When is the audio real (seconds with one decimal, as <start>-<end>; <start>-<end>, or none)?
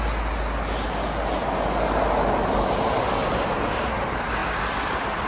0.0-3.2; 3.7-5.3